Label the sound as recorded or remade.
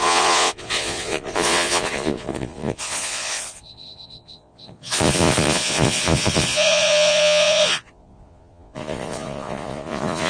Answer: remade